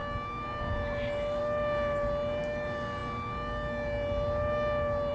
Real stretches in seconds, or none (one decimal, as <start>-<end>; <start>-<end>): 0.0-5.1